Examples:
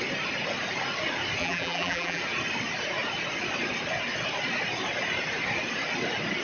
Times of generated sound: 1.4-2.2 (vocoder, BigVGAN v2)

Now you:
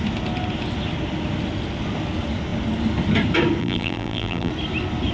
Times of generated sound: 3.6-4.5 (vocoder, BigVGAN v2)

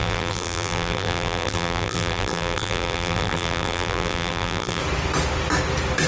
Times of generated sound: 0.0-4.8 (vocoder, BigVGAN v2)